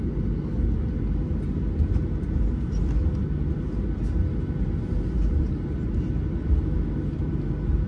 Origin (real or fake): real